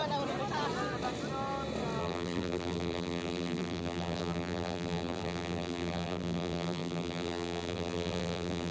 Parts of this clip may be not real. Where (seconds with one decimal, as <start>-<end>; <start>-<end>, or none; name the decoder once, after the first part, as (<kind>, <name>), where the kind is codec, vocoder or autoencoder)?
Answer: 2.0-8.7 (vocoder, BigVGAN v2)